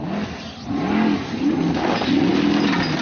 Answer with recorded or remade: recorded